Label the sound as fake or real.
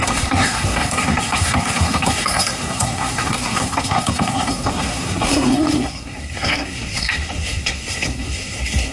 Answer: fake